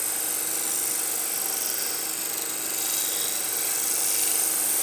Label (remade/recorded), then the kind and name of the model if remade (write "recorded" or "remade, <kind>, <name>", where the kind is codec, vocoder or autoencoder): recorded